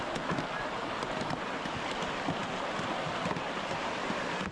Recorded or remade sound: recorded